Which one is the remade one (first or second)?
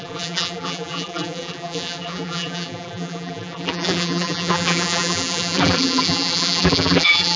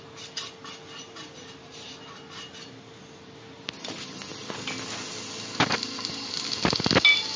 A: first